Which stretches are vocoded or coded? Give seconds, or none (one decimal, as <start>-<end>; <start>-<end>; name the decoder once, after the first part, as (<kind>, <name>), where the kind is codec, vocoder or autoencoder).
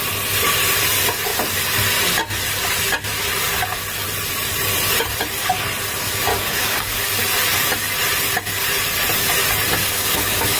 6.3-7.1 (codec, DAC); 9.8-10.6